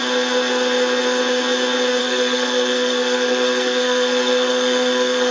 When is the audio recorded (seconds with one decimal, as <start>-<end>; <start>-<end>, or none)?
0.0-2.0